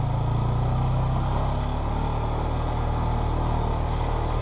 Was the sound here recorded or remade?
recorded